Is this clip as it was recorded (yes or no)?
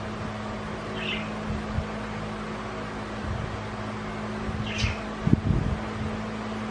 yes